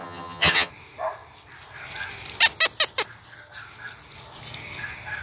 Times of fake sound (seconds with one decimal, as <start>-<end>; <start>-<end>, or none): 0.0-0.7